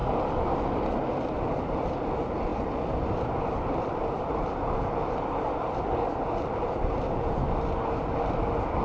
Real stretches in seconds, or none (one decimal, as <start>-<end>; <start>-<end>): 0.5-8.8